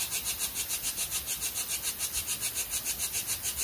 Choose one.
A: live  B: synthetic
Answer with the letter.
A